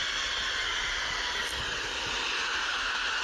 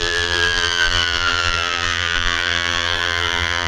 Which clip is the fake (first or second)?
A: second